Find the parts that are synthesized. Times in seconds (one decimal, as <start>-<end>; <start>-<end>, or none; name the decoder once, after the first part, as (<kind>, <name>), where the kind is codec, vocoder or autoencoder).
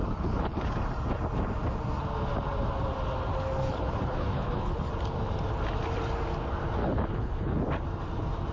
0.0-0.7 (codec, HILCodec); 3.6-4.9; 6.8-7.6